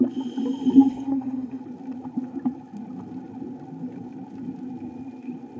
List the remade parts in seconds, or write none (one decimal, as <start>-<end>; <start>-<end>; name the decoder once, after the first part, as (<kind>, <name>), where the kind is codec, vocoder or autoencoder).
0.9-1.6 (codec, SNAC)